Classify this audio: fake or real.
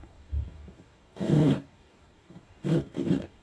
fake